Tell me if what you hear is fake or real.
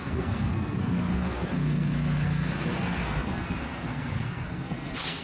fake